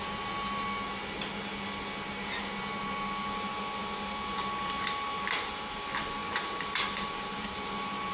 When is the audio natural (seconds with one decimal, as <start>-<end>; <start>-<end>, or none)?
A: 0.0-8.1